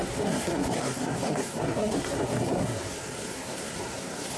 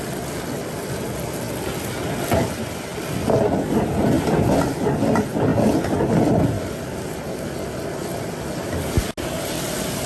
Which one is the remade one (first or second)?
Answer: first